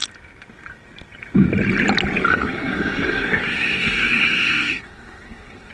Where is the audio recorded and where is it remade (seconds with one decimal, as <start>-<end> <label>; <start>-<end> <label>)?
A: 0.0-2.3 recorded; 2.3-5.7 remade

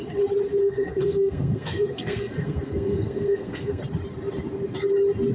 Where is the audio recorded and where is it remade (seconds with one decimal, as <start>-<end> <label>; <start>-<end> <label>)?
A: 0.0-0.6 recorded; 0.6-3.8 remade; 3.8-5.3 recorded

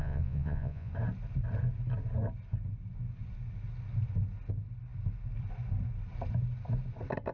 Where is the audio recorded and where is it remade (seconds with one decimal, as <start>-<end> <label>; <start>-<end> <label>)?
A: 0.0-0.9 remade; 0.9-7.3 recorded

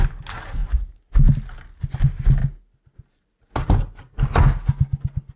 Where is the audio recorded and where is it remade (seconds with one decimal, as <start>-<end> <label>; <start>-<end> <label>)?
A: 0.0-5.4 recorded

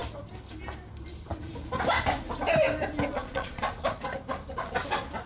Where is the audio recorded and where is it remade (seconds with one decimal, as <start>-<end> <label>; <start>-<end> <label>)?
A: 0.0-3.1 recorded; 3.1-3.6 remade; 3.6-5.3 recorded

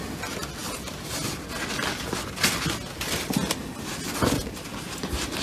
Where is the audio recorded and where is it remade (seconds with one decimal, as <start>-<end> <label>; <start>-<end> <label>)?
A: 0.0-5.4 recorded

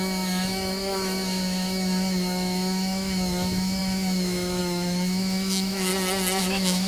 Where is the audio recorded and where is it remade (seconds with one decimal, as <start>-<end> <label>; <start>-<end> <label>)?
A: 0.0-5.9 remade; 5.9-6.4 recorded; 6.4-6.9 remade